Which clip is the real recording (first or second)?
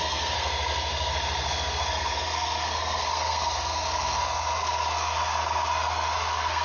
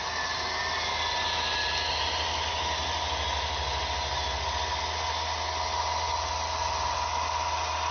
second